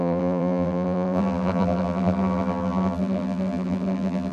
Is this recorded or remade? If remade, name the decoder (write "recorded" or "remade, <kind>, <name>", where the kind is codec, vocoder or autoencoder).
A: remade, vocoder, BigVGAN v2